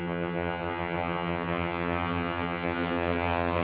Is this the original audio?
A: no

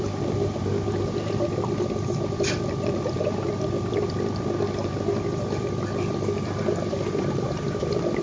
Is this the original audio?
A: no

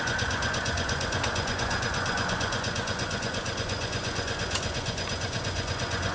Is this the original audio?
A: no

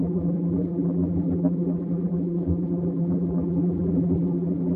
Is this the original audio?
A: no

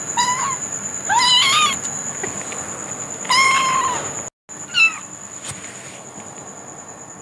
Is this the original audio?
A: yes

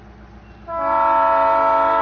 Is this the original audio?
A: yes